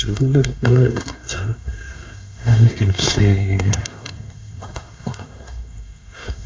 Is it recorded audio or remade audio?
remade